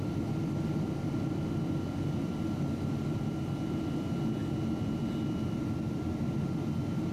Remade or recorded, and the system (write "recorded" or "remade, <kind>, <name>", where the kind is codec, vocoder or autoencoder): recorded